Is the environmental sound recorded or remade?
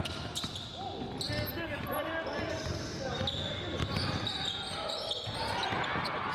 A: recorded